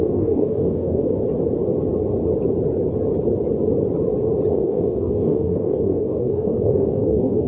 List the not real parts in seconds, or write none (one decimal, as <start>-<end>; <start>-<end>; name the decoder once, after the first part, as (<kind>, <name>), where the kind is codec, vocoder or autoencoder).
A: 0.0-1.2 (codec, DAC); 4.5-7.5